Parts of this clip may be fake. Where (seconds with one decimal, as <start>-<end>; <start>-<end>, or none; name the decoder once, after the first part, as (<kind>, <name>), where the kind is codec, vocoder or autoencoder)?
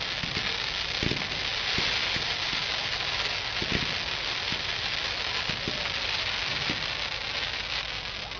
none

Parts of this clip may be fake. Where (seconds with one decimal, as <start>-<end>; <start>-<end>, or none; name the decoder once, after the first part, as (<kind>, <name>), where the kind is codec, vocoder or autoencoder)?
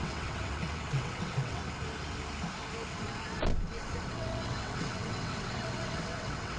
0.0-1.6 (vocoder, WaveNeXt); 4.1-6.6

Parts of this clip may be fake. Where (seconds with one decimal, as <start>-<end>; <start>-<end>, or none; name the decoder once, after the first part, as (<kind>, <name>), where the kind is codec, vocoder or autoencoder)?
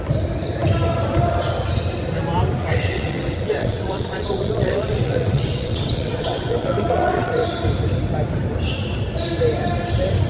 2.6-7.3 (vocoder, WaveNeXt)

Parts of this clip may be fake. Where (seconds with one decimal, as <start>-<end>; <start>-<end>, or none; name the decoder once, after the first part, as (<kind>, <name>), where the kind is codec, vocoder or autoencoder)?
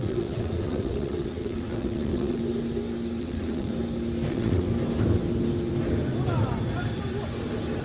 0.0-2.4 (vocoder, WaveNeXt); 3.2-3.7; 4.3-4.7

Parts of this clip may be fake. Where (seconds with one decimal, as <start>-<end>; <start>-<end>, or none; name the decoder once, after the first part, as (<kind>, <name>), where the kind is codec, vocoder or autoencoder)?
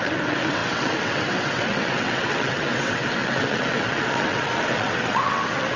0.0-5.8 (vocoder, WaveNeXt)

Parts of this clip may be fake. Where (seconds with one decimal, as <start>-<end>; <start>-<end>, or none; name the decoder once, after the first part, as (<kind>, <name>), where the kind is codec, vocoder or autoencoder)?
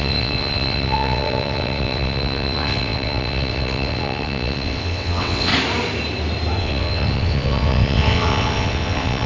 0.0-5.5 (vocoder, WaveNeXt); 6.6-9.3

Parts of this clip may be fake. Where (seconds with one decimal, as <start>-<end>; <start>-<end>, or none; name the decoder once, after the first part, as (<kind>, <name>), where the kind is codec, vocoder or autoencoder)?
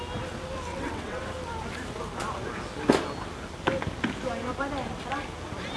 0.7-1.2 (vocoder, WaveNeXt)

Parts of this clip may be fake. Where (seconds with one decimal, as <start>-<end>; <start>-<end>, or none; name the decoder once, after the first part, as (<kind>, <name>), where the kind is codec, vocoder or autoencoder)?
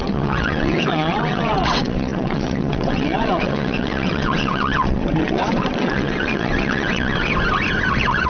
0.0-7.3 (vocoder, WaveNeXt); 7.9-8.3